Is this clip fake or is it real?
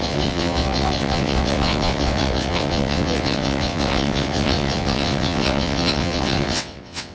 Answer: fake